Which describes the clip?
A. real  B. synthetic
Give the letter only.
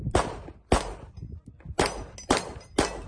A